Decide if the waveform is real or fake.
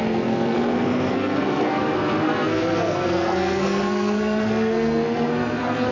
fake